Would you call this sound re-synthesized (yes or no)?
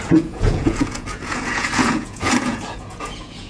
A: yes